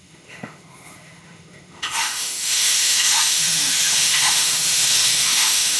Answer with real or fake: fake